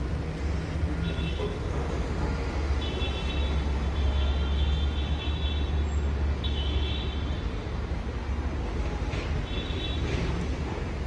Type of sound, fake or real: real